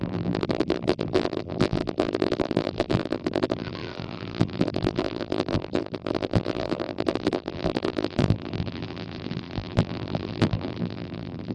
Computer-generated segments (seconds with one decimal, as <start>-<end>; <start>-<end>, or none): 0.0-11.5